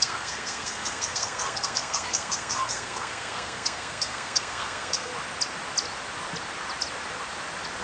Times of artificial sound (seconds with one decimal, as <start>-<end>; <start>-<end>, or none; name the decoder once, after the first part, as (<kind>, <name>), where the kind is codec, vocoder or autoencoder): 0.0-5.1 (codec, SNAC)